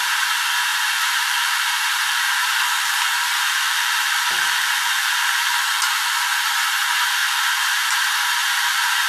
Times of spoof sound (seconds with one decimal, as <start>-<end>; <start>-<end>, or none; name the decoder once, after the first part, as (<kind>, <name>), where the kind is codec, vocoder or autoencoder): 0.7-5.9 (vocoder, BigVGAN v2); 7.2-8.0; 8.4-9.1